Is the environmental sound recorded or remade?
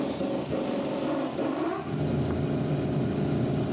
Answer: recorded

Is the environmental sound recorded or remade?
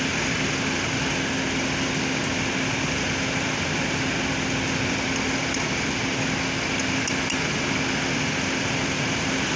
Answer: recorded